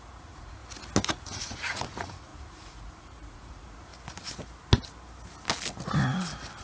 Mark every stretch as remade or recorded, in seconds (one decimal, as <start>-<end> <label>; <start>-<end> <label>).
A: 0.0-0.6 remade; 0.6-1.1 recorded; 1.1-3.9 remade; 3.9-6.6 recorded